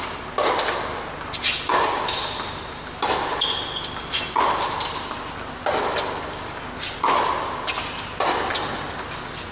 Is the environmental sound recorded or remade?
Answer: recorded